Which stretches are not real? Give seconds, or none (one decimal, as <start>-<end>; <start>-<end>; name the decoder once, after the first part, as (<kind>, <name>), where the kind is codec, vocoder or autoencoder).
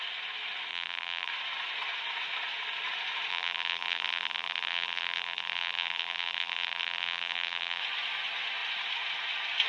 0.7-1.3 (vocoder, BigVGAN v2); 3.3-7.8